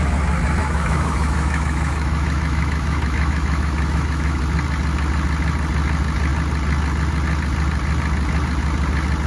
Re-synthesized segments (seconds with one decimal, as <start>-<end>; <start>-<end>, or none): 0.6-4.4